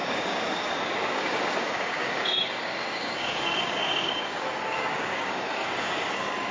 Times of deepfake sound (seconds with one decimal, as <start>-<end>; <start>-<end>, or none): 0.0-6.5